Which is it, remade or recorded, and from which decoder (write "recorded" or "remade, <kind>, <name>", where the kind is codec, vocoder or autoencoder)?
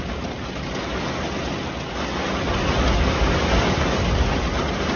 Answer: recorded